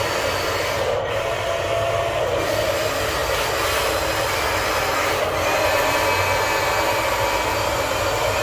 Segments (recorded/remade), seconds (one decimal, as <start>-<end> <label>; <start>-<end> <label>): 0.0-8.4 recorded